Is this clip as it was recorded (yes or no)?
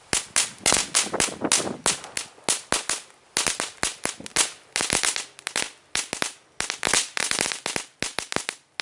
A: yes